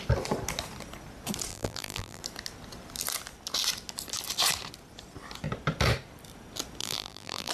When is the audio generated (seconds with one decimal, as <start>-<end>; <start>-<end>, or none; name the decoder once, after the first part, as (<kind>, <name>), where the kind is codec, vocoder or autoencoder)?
1.5-2.2 (vocoder, BigVGAN v2); 6.8-7.5